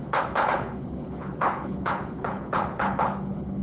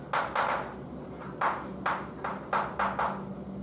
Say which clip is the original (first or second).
second